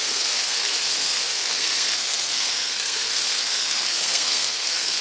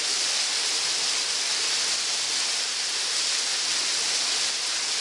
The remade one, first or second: first